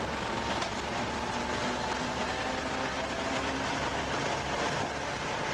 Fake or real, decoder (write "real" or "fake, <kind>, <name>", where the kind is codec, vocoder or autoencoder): real